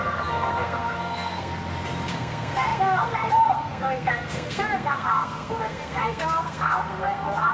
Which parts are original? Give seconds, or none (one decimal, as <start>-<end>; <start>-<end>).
1.5-2.1